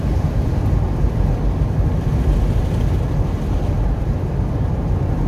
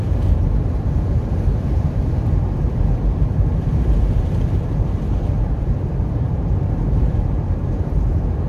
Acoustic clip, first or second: first